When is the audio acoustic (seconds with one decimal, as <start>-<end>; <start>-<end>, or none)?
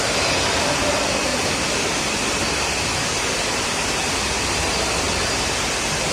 0.0-6.1